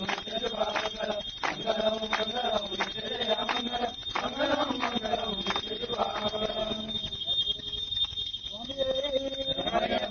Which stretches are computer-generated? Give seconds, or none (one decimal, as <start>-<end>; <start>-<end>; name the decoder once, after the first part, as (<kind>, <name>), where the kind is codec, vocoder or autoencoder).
6.6-9.3 (codec, DAC)